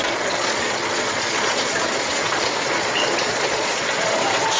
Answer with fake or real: fake